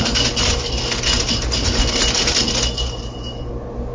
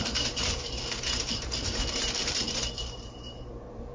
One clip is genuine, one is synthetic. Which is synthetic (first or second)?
second